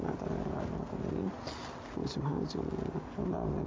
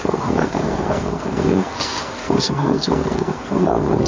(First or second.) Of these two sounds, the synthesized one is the second